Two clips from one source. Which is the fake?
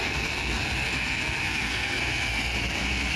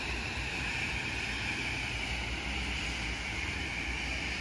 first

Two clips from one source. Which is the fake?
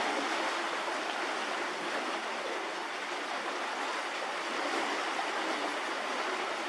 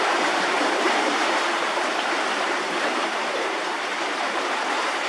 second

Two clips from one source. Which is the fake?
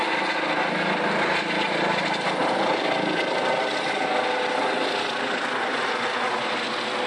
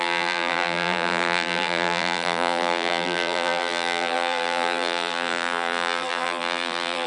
second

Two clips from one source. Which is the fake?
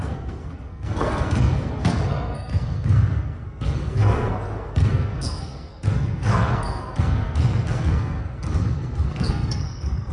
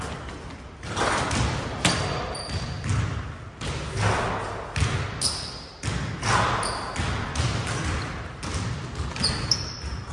first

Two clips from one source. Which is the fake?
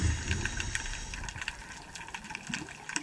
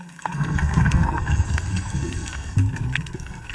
second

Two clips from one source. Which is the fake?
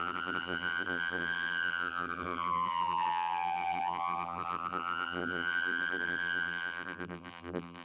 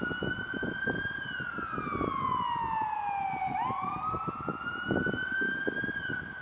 first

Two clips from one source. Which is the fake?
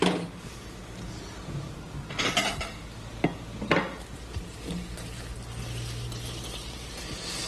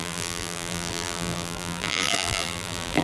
second